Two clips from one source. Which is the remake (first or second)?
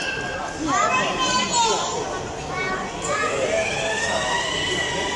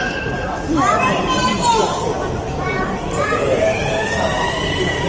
second